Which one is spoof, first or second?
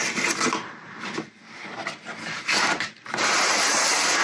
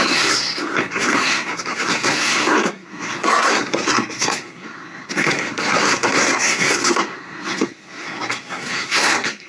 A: second